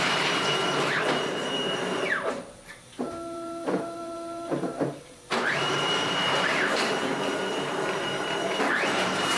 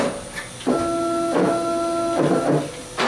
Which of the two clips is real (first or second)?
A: second